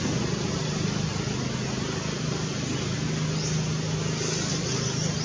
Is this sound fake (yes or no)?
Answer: no